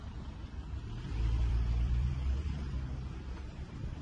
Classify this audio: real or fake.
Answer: fake